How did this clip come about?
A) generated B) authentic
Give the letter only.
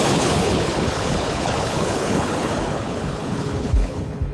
A